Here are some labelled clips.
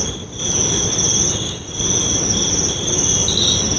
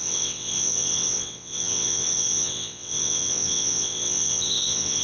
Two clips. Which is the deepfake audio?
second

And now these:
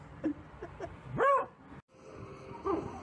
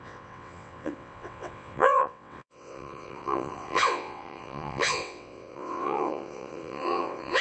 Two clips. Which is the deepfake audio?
second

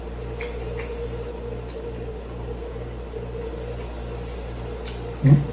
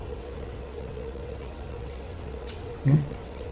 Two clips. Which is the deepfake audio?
second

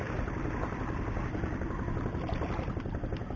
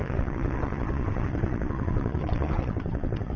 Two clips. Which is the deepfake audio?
second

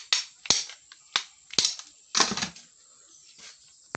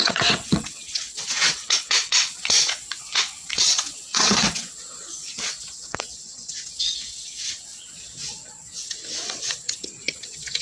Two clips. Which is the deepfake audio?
second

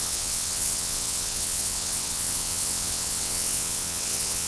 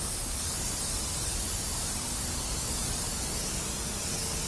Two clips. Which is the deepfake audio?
first